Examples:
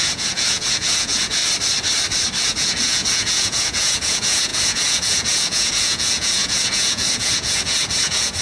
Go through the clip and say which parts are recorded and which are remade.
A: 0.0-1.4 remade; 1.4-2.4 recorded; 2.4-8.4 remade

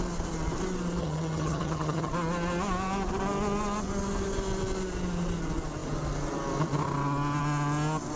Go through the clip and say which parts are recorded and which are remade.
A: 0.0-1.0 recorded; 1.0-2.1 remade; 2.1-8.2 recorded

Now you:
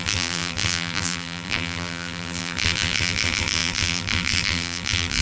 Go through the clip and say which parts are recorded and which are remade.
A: 0.0-5.2 remade